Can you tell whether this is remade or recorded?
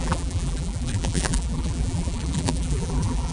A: remade